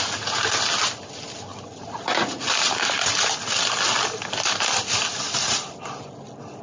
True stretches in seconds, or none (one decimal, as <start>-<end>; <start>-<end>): 0.0-6.6